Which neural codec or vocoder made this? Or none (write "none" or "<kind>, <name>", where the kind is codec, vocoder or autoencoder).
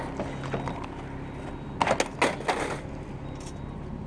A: none